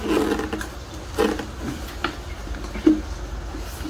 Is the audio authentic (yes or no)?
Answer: yes